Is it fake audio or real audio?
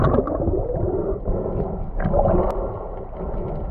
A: real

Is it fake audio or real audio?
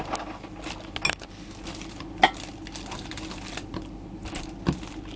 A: real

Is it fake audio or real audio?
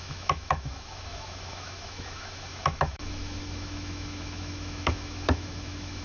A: fake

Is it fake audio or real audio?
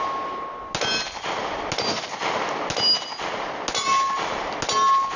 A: real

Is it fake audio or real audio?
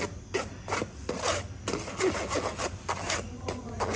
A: real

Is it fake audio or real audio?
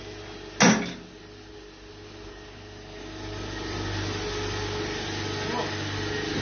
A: real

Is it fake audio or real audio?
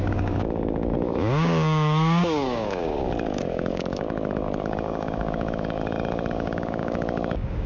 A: fake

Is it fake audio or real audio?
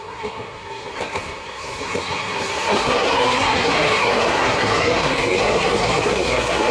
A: fake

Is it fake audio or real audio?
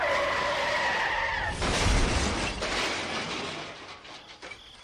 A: fake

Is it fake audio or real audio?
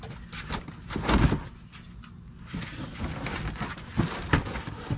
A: real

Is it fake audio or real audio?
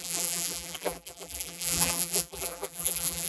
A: fake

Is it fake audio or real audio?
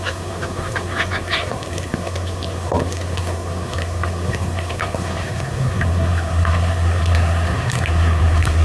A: fake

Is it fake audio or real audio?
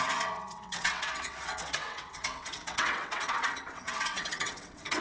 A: fake